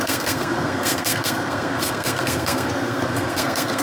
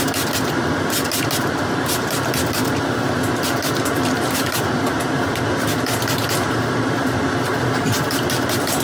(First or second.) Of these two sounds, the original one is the second